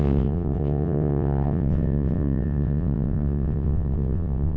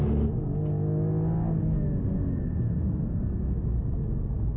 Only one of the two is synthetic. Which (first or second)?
first